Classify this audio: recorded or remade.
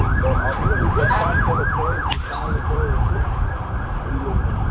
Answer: remade